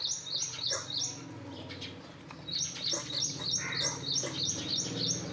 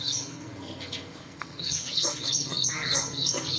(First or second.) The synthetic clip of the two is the second